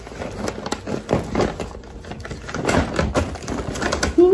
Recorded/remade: recorded